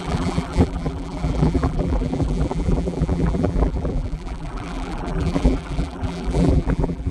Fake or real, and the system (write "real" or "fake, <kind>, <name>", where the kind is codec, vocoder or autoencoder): fake, vocoder, BigVGAN v2